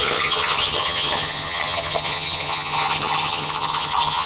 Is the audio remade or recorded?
remade